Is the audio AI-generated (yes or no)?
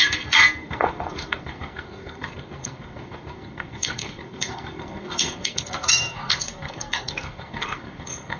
yes